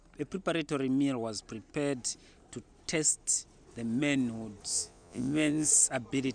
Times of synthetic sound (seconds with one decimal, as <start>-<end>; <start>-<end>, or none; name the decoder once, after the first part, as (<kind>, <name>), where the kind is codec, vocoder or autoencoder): 4.7-5.7 (vocoder, Vocos)